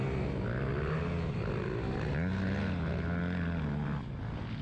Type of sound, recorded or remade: recorded